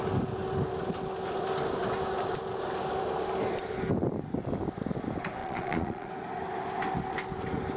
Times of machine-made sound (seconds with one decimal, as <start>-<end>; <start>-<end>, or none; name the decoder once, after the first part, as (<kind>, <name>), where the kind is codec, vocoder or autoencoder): 5.4-6.1 (vocoder, Vocos)